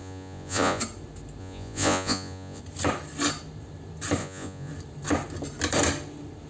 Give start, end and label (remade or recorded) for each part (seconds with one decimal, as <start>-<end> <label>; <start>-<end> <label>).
0.0-0.8 remade; 0.8-1.4 recorded; 1.4-2.6 remade; 2.6-4.2 recorded; 4.2-4.7 remade; 4.7-6.5 recorded